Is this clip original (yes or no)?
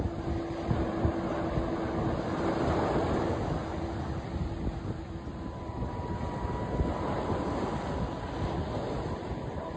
yes